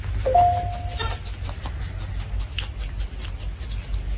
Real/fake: real